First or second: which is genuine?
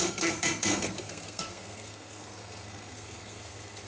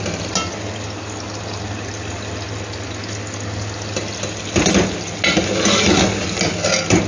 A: second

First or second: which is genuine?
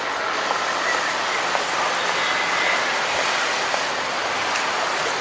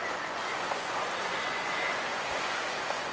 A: first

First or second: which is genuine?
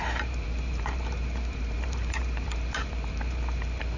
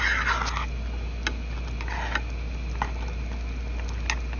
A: second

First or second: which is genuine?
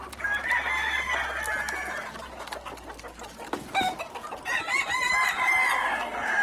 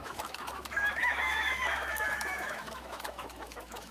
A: first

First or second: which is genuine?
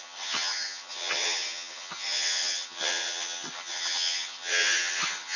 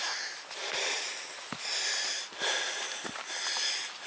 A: second